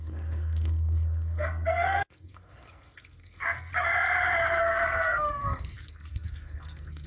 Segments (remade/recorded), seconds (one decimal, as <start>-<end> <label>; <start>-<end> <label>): 0.0-3.7 remade; 3.7-4.6 recorded; 4.6-7.1 remade